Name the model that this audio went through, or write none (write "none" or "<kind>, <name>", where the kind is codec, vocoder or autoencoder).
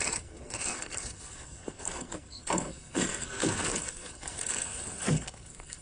codec, SNAC